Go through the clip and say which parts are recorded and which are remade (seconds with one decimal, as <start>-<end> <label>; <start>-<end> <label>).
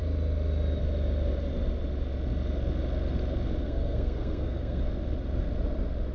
0.0-3.6 recorded; 3.6-4.8 remade; 4.8-6.1 recorded